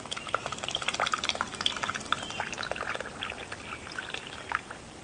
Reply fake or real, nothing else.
real